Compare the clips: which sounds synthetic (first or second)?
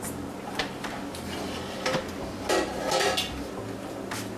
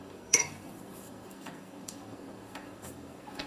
second